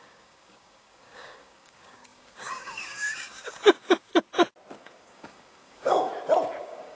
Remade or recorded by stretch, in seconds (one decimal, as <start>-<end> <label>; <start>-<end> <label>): 0.0-4.1 remade; 4.1-4.8 recorded; 4.8-6.1 remade; 6.1-6.6 recorded; 6.6-7.0 remade